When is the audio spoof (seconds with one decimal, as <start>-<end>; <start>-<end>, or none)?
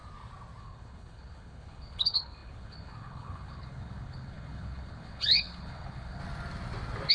0.6-6.2